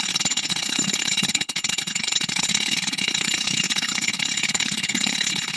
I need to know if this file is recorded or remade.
remade